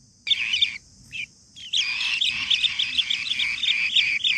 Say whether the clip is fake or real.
real